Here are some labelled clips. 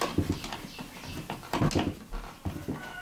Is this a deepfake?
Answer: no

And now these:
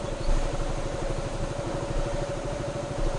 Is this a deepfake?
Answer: no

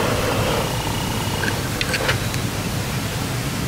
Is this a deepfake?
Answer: no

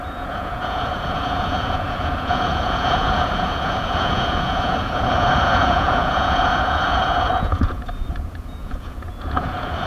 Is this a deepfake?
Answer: yes